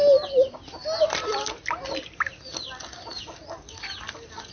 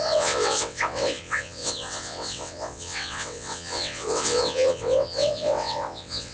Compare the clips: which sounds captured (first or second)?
first